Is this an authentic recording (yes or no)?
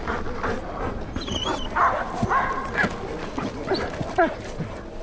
yes